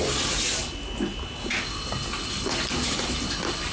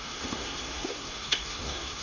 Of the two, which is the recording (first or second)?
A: first